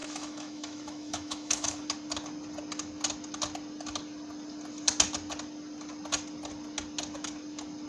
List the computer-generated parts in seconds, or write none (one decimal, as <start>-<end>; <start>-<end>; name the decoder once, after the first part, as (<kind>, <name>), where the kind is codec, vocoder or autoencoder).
0.0-1.8 (autoencoder, DAC-VAE)